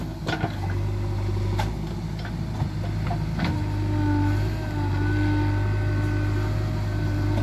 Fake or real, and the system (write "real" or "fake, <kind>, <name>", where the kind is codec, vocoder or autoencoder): real